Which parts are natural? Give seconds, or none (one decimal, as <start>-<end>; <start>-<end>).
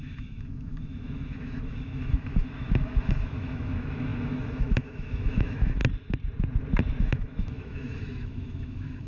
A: 5.8-7.0